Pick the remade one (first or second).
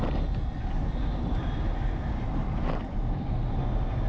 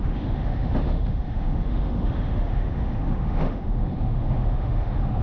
second